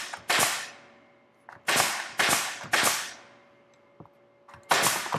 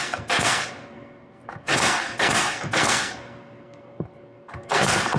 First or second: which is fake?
second